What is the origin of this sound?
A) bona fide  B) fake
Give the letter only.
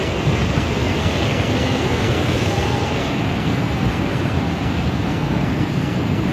B